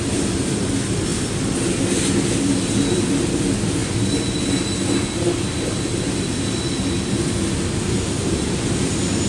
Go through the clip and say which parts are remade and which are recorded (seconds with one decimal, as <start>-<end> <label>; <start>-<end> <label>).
0.0-9.3 recorded